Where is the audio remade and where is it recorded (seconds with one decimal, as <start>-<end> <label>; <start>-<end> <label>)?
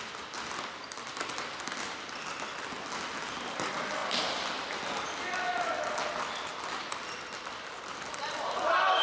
0.0-9.0 recorded